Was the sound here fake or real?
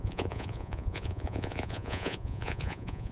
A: fake